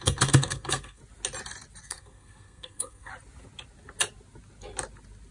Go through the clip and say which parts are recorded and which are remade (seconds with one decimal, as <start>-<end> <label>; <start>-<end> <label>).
0.0-1.0 remade; 1.0-1.8 recorded; 1.8-3.1 remade; 3.1-5.3 recorded